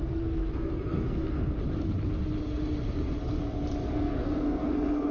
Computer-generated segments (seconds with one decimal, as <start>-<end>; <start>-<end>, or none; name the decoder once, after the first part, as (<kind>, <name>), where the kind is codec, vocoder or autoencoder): 0.0-1.5 (codec, SNAC); 3.9-5.1